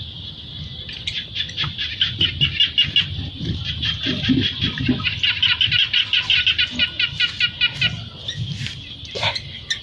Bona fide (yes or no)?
yes